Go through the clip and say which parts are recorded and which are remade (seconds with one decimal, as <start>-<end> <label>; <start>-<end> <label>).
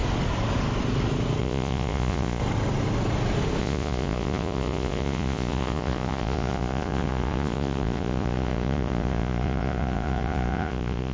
0.0-1.4 recorded; 1.4-2.4 remade; 2.4-3.6 recorded; 3.6-11.1 remade